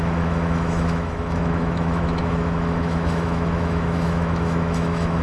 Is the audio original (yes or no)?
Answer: no